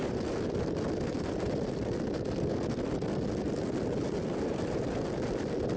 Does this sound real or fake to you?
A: real